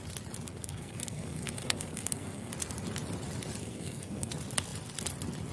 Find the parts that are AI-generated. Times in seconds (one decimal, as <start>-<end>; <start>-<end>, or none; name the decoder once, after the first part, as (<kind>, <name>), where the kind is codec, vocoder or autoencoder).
0.5-2.5 (codec, SNAC); 3.6-4.3